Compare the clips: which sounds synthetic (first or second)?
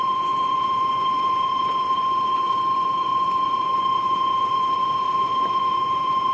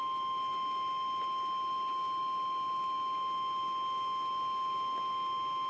first